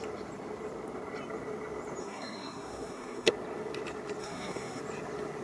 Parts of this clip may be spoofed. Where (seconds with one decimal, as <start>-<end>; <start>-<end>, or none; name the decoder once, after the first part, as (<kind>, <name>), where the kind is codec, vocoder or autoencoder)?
2.0-3.3 (codec, SNAC); 4.2-4.8